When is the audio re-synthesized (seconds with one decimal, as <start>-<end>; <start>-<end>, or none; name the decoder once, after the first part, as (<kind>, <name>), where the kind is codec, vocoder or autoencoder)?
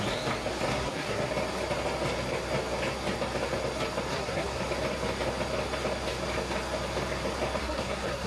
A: 0.7-1.3 (codec, SNAC); 4.1-4.6; 7.6-8.3